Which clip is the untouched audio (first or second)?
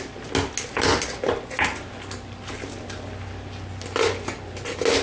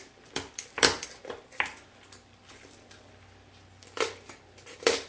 first